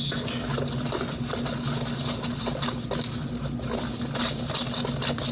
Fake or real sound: real